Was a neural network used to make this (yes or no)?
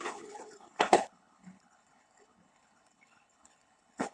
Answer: yes